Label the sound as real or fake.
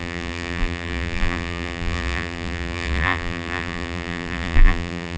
fake